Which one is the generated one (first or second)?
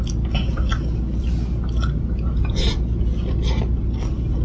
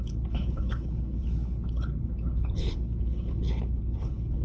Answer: second